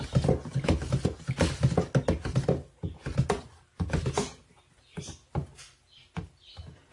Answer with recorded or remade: recorded